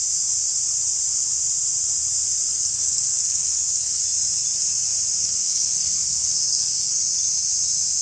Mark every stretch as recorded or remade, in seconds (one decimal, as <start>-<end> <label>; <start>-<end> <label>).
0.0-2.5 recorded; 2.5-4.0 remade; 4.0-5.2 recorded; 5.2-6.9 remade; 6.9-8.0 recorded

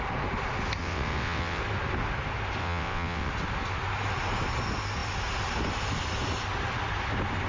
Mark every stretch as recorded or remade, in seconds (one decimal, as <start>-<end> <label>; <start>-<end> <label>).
0.0-0.8 recorded; 0.8-1.6 remade; 1.6-2.6 recorded; 2.6-3.3 remade; 3.3-7.5 recorded

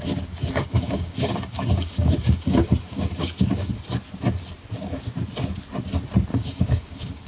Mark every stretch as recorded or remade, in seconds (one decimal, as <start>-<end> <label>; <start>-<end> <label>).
0.0-0.4 recorded; 0.4-3.7 remade; 3.7-6.3 recorded; 6.3-7.3 remade

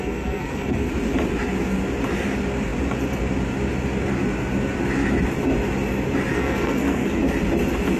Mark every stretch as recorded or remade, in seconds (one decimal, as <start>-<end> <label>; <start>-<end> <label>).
0.0-0.9 remade; 0.9-6.3 recorded; 6.3-7.2 remade; 7.2-8.0 recorded

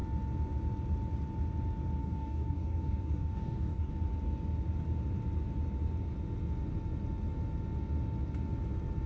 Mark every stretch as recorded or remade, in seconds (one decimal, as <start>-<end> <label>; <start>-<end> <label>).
0.0-2.0 recorded; 2.0-3.9 remade; 3.9-9.1 recorded